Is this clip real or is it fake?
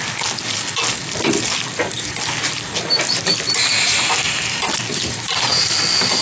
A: real